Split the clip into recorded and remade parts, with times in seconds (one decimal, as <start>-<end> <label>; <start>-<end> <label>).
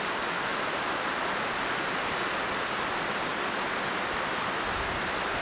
0.0-5.4 recorded